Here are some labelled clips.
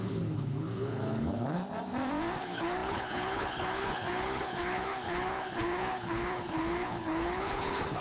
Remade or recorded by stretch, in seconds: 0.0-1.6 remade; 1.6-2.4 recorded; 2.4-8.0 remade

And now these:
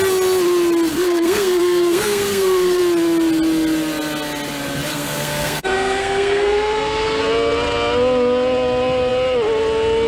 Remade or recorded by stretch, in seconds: 0.0-0.9 recorded; 0.9-2.8 remade; 2.8-4.9 recorded; 4.9-7.2 remade; 7.2-10.1 recorded

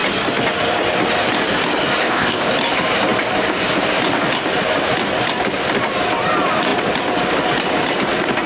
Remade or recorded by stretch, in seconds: 0.0-2.0 recorded; 2.0-2.5 remade; 2.5-8.5 recorded